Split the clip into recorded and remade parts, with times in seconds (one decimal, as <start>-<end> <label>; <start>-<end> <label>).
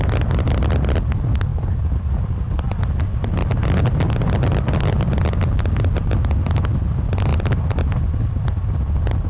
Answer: 0.0-7.3 remade; 7.3-8.3 recorded; 8.3-9.3 remade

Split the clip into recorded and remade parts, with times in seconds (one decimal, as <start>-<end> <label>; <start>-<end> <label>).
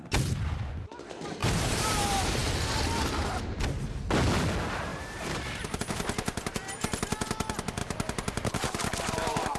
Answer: 0.0-1.4 recorded; 1.4-2.5 remade; 2.5-4.9 recorded; 4.9-5.8 remade; 5.8-7.8 recorded; 7.8-9.0 remade; 9.0-9.6 recorded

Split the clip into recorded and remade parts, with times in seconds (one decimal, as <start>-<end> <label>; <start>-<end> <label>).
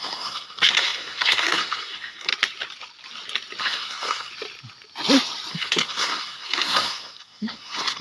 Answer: 0.0-2.3 remade; 2.3-3.6 recorded; 3.6-4.3 remade; 4.3-5.5 recorded; 5.5-8.0 remade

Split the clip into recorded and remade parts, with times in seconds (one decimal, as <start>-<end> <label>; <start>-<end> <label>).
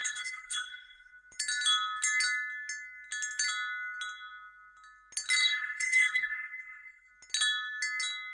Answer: 0.0-1.1 remade; 1.1-5.4 recorded; 5.4-7.1 remade; 7.1-8.3 recorded